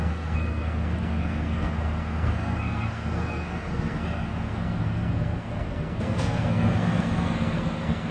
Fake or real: fake